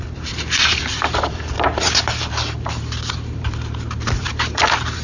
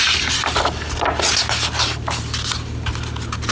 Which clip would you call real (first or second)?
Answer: second